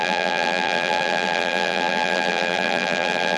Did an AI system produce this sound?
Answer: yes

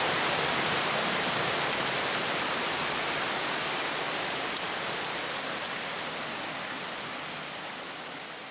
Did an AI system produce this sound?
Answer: no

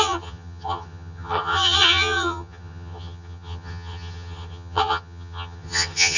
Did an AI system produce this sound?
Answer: yes